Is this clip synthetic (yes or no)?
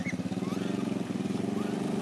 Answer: no